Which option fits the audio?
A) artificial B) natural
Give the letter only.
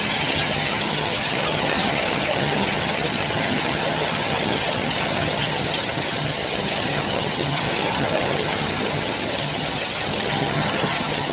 A